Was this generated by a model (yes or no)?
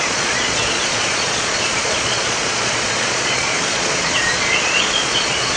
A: yes